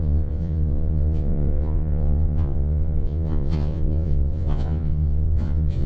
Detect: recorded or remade remade